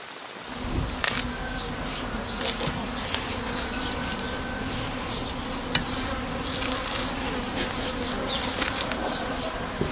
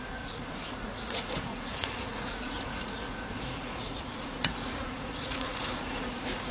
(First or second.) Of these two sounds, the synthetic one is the second